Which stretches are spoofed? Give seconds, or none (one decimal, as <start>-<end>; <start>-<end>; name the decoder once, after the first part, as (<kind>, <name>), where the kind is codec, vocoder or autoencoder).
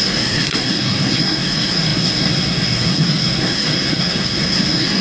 0.0-5.0 (codec, SNAC)